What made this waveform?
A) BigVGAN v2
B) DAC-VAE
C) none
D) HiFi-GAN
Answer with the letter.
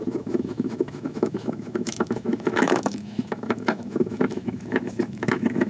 B